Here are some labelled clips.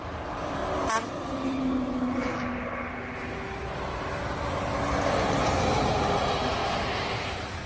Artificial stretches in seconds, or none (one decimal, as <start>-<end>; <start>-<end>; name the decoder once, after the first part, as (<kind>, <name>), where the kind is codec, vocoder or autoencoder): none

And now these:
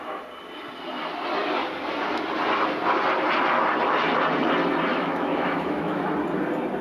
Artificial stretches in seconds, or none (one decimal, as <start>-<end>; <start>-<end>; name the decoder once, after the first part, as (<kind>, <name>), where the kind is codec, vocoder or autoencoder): 4.9-6.0 (autoencoder, DAC-VAE)

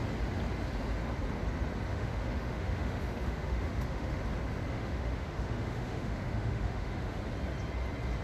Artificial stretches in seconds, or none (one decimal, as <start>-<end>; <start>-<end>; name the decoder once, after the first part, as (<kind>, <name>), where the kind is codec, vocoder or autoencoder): 1.9-4.2 (autoencoder, DAC-VAE); 4.7-7.2

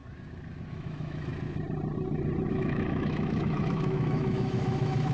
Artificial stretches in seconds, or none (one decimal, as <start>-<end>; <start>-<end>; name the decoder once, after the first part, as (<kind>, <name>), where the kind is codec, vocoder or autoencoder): 0.7-1.3 (autoencoder, DAC-VAE); 2.5-5.1